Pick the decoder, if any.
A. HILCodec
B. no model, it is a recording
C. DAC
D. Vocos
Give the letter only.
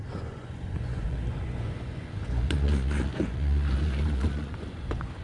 D